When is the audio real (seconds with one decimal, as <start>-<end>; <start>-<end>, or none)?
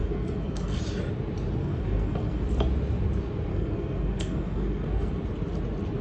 0.8-1.6; 2.4-3.5; 5.1-6.0